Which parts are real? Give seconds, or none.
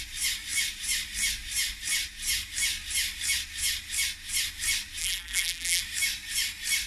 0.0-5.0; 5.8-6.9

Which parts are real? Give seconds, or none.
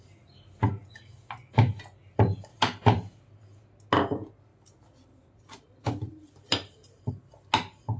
0.0-2.5; 3.6-4.5; 7.1-8.0